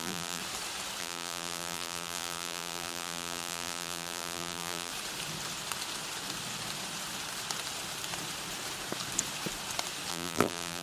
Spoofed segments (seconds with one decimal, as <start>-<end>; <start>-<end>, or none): 0.0-0.4; 1.0-4.9; 10.1-10.8